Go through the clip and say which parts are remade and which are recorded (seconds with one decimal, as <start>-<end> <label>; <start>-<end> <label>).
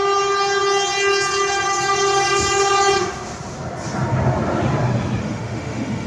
0.0-5.2 recorded; 5.2-6.1 remade